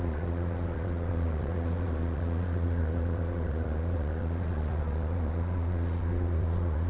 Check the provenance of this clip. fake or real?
fake